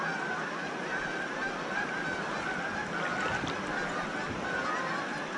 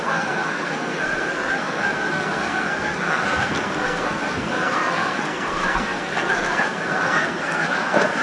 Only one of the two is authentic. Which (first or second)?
first